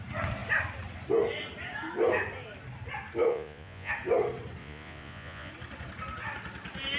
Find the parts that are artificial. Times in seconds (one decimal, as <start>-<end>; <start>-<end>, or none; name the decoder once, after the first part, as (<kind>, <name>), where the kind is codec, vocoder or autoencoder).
3.3-3.9 (vocoder, Vocos); 4.6-5.5